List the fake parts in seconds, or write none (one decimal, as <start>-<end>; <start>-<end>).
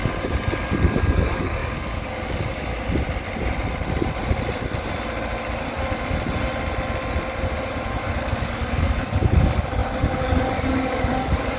0.6-2.7; 7.9-11.6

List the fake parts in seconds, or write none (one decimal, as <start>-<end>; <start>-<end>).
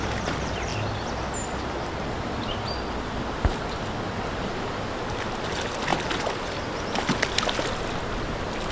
none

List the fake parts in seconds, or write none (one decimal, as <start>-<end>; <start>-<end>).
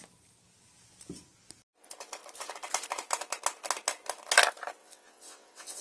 4.8-5.8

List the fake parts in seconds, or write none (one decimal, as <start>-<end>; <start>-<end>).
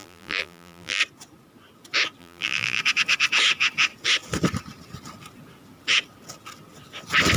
0.0-1.0; 2.2-2.8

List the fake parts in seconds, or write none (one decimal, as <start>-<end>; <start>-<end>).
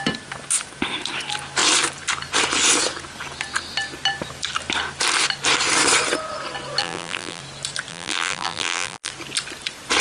6.8-7.4; 7.9-9.1